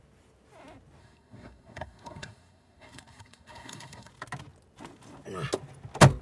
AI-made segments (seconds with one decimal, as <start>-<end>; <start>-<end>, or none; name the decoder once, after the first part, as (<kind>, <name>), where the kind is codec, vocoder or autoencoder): 1.0-4.1 (codec, SNAC)

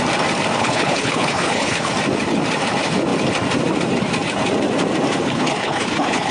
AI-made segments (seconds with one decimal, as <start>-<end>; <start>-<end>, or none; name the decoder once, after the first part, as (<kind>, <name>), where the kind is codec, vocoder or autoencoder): 0.6-1.9 (codec, HILCodec); 5.2-6.3

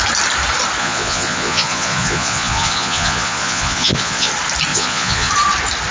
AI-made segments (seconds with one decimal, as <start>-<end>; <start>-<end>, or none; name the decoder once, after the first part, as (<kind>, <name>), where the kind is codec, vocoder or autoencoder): 0.8-4.3 (vocoder, Vocos); 4.7-5.3

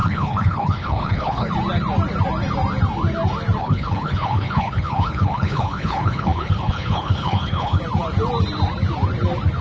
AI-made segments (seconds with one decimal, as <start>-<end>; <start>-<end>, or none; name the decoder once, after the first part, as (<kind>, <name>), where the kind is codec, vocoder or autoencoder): 0.0-1.5 (codec, HILCodec); 3.6-7.8

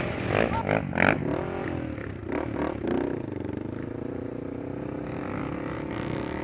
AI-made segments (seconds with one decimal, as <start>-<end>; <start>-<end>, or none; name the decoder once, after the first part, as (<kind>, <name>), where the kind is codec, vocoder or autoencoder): 2.2-4.6 (vocoder, BigVGAN v2)

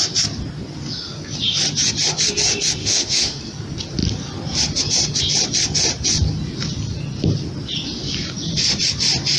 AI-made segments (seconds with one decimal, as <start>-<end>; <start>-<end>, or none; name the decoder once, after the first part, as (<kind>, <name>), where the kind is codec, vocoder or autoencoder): 2.8-3.4 (autoencoder, DAC-VAE)

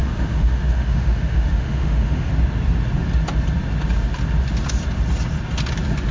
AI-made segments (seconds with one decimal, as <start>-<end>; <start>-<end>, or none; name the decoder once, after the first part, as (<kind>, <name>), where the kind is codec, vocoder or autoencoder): 0.0-2.3 (autoencoder, DAC-VAE)